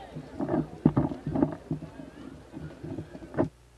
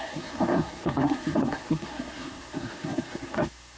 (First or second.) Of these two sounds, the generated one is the second